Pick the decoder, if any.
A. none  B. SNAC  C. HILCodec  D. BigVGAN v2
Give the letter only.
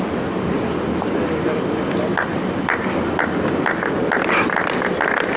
A